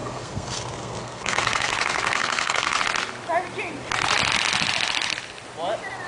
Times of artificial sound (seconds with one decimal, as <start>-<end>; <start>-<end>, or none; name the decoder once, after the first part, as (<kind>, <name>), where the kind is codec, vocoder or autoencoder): 0.0-2.8 (codec, SNAC)